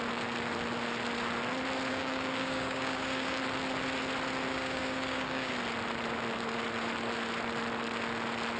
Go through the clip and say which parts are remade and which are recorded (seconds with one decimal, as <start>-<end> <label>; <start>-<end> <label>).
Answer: 0.0-1.9 recorded; 1.9-3.4 remade; 3.4-4.5 recorded; 4.5-5.5 remade; 5.5-8.6 recorded